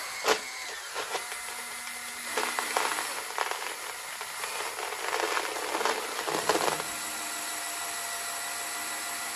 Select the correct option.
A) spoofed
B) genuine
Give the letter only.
B